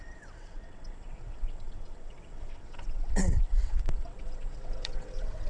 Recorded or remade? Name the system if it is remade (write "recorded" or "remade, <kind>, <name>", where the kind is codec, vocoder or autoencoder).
remade, vocoder, WaveNeXt